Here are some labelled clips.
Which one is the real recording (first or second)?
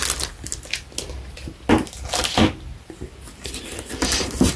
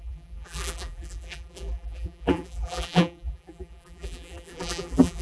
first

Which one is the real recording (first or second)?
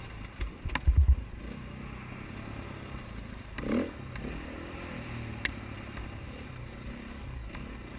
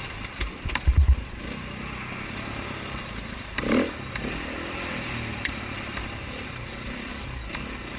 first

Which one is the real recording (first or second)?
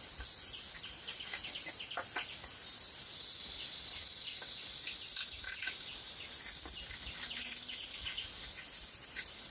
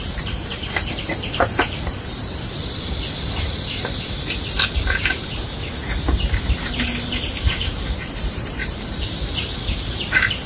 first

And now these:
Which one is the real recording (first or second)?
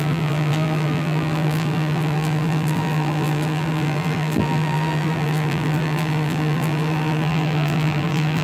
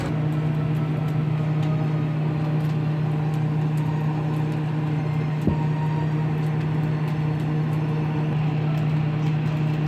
second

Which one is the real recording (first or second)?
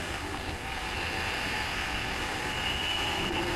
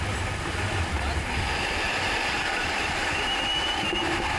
second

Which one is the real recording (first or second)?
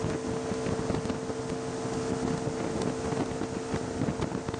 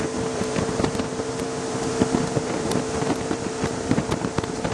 first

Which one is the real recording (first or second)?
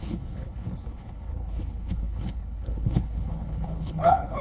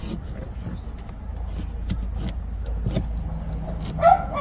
second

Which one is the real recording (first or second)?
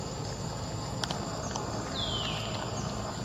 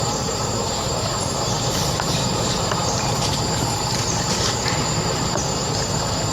first